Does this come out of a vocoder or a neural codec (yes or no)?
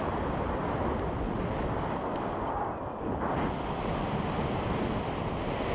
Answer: no